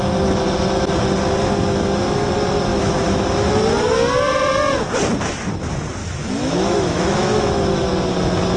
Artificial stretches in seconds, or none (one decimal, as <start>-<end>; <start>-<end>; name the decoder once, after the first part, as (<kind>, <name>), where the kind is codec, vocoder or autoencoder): 2.7-3.5 (autoencoder, DAC-VAE); 6.0-7.8